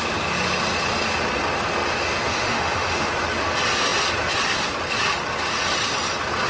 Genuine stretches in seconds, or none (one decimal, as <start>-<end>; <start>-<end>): 0.0-2.3; 3.1-6.5